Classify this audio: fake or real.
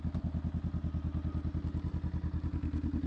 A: real